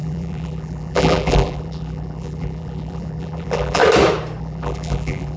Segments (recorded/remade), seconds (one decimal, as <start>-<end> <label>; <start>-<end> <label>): 0.0-3.8 remade; 3.8-4.4 recorded; 4.4-5.4 remade